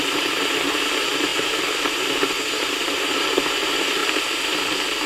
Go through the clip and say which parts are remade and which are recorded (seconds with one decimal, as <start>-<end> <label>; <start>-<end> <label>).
0.0-4.0 remade; 4.0-5.1 recorded